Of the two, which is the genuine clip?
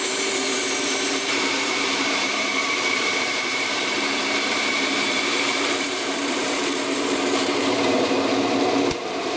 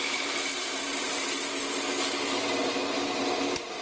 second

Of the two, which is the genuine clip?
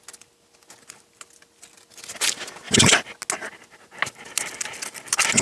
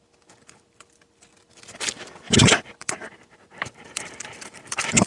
first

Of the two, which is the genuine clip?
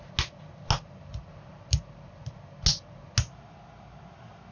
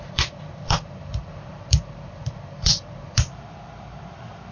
first